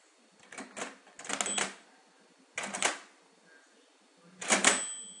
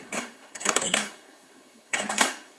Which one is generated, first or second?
second